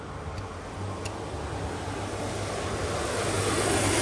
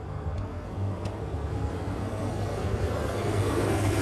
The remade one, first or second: second